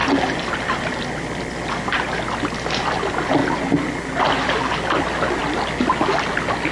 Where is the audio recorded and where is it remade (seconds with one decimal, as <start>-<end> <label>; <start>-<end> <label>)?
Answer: 0.0-1.0 remade; 1.0-6.7 recorded